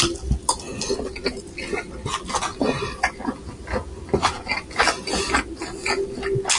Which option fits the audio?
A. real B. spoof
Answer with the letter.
A